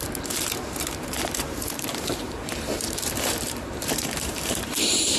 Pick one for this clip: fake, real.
fake